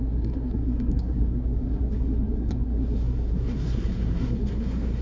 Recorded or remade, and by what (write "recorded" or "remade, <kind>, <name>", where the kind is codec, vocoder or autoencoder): remade, codec, SNAC